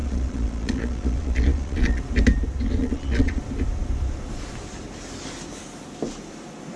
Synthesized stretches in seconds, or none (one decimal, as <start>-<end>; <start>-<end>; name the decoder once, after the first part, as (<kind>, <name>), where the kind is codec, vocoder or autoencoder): 0.0-2.0 (vocoder, Vocos); 2.8-3.4